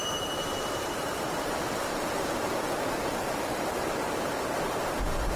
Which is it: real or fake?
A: fake